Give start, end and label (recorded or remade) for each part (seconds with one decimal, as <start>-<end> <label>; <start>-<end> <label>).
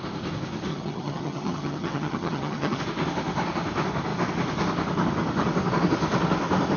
0.0-0.7 recorded; 0.7-2.8 remade; 2.8-6.8 recorded